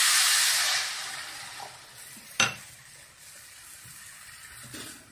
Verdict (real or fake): real